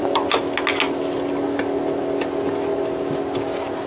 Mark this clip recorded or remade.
recorded